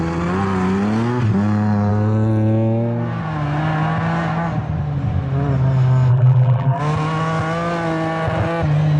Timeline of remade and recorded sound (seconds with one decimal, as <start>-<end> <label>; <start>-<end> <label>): 0.0-6.1 recorded; 6.1-6.8 remade; 6.8-9.0 recorded